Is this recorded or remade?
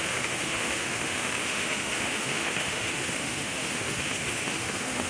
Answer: remade